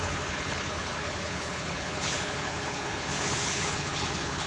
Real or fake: fake